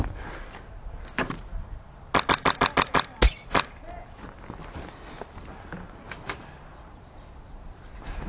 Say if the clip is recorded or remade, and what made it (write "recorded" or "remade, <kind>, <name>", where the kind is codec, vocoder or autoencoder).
recorded